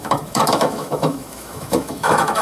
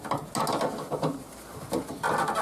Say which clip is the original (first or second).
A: second